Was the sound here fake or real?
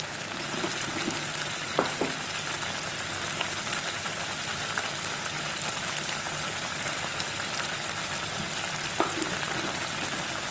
real